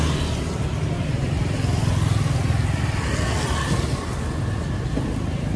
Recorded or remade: recorded